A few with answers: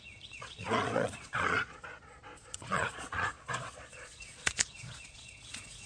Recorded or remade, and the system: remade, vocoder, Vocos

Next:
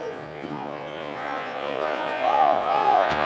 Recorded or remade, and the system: remade, vocoder, Vocos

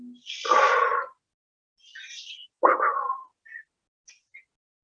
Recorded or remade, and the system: recorded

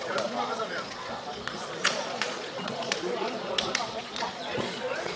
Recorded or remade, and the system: remade, vocoder, Vocos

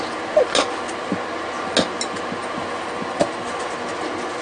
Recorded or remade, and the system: recorded